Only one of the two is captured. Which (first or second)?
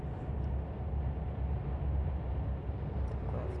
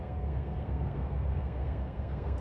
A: first